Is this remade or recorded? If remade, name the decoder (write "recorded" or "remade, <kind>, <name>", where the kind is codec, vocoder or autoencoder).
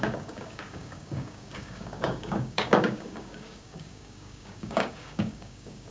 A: remade, codec, DAC